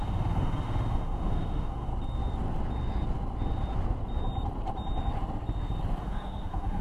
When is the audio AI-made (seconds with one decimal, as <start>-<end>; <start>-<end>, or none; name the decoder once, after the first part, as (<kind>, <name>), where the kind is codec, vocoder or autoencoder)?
0.0-1.9 (autoencoder, DAC-VAE); 6.0-6.8